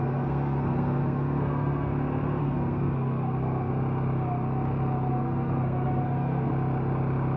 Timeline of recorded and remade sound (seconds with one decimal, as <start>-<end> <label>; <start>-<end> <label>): 0.0-1.9 remade; 1.9-2.4 recorded; 2.4-3.7 remade; 3.7-5.1 recorded; 5.1-6.5 remade; 6.5-7.4 recorded